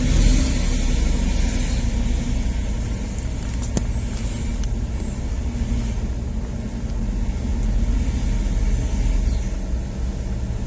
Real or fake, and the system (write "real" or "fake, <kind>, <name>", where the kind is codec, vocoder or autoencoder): real